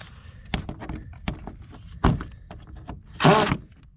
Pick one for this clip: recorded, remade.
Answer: recorded